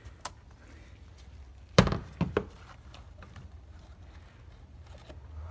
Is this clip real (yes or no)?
yes